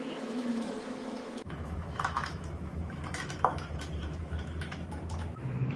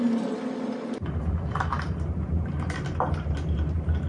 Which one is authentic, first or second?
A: second